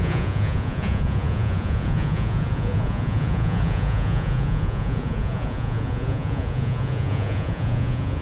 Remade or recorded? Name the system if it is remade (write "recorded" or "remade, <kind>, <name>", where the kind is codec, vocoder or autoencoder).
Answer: remade, vocoder, Vocos